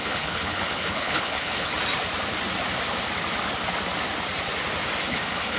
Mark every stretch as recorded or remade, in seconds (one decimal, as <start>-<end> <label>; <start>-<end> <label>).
0.0-1.7 remade; 1.7-5.1 recorded; 5.1-5.6 remade